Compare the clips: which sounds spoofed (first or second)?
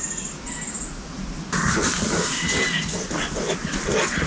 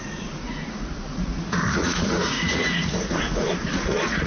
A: second